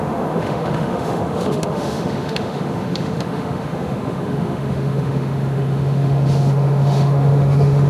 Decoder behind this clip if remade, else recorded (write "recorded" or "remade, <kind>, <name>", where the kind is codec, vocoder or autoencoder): remade, autoencoder, DAC-VAE